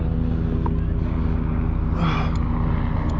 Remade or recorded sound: recorded